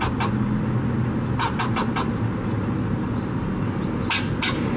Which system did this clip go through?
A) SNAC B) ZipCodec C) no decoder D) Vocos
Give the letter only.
C